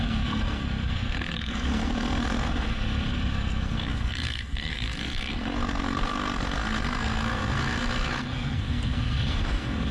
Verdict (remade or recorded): remade